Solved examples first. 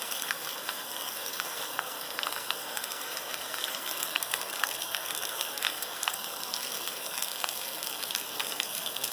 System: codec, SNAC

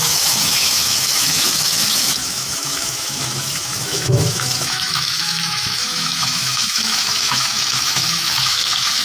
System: autoencoder, DAC-VAE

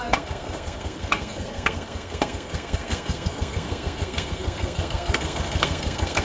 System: codec, SNAC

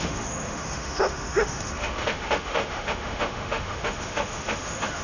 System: autoencoder, DAC-VAE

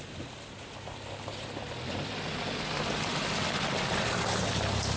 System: none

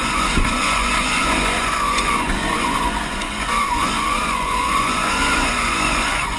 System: vocoder, Vocos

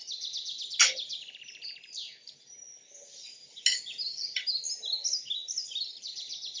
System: none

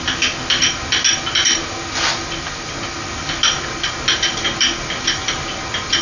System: none